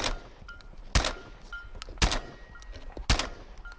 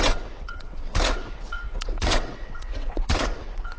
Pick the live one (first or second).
first